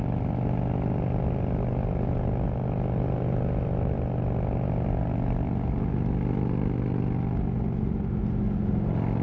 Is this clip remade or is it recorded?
recorded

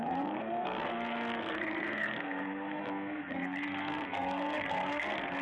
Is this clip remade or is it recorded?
remade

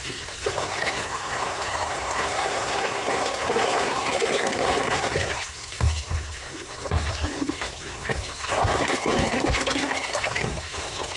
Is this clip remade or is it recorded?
remade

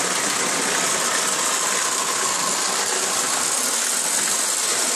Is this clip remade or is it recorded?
recorded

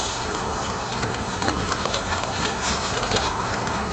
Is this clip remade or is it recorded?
remade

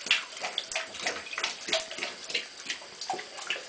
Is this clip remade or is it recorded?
recorded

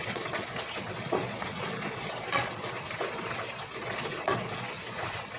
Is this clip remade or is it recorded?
remade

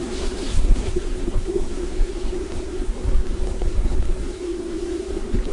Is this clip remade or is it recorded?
remade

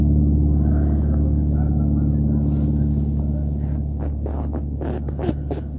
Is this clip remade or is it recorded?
recorded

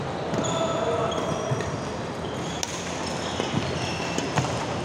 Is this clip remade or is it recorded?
recorded